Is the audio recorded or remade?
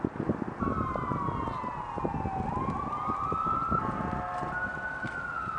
recorded